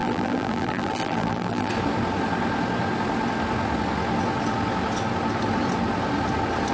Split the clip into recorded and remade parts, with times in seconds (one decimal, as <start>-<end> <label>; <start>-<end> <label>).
0.0-1.7 remade; 1.7-6.7 recorded